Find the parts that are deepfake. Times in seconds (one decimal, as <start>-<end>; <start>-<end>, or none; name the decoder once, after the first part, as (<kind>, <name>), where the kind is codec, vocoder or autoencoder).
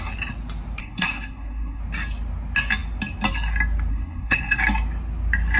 0.8-1.8 (codec, SNAC); 3.9-4.6